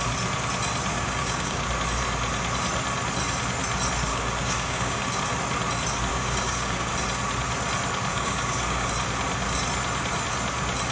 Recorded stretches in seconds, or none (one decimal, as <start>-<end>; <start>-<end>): 0.0-0.9; 1.6-4.1; 5.2-6.1; 6.9-8.1; 8.9-10.9